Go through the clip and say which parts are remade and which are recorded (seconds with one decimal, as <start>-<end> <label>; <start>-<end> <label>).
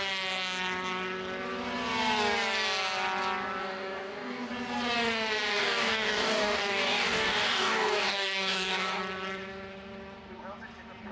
0.0-3.6 recorded; 3.6-4.5 remade; 4.5-5.5 recorded; 5.5-9.0 remade; 9.0-11.1 recorded